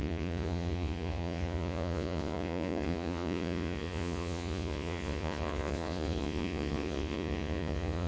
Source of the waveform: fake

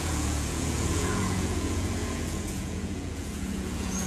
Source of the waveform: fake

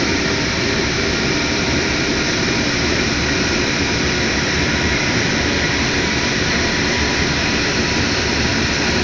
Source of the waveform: real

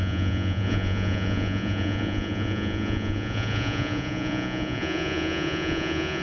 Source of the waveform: fake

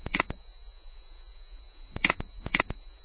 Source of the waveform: fake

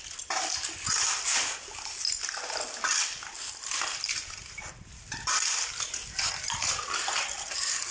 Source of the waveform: real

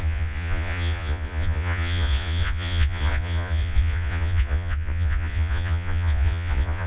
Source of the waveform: fake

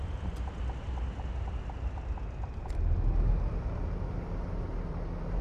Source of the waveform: real